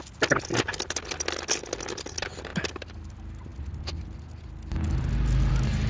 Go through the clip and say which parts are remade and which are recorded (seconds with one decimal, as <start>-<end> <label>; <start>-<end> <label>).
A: 0.0-5.9 recorded